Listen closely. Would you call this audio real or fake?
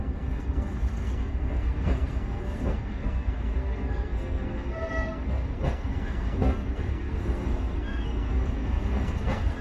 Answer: fake